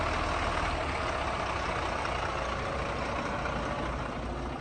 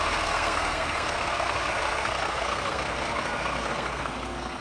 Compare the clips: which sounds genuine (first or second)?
first